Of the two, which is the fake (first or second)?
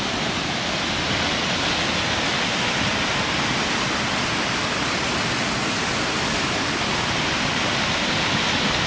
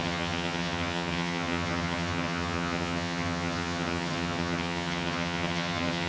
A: second